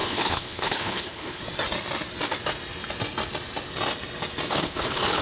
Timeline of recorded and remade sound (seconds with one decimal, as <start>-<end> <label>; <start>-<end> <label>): 0.0-1.4 remade; 1.4-4.5 recorded; 4.5-5.2 remade